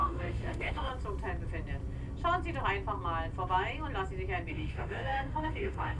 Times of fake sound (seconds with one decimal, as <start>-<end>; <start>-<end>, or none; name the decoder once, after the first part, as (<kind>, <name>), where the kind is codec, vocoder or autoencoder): 0.0-0.9 (autoencoder, DAC-VAE); 4.5-6.0